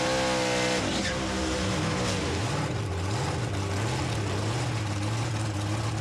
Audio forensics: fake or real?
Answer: real